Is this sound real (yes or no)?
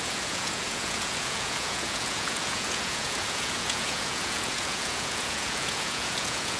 no